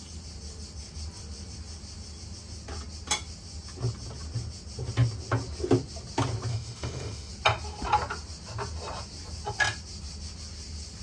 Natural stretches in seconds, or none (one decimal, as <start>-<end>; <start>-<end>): 0.0-6.5; 7.3-11.0